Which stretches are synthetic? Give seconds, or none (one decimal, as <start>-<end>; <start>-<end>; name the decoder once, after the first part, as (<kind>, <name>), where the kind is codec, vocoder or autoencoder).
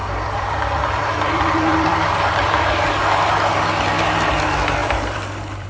0.0-2.7 (vocoder, BigVGAN v2); 4.8-5.7